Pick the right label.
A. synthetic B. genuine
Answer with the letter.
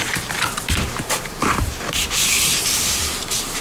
A